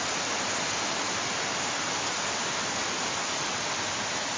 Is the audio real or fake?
real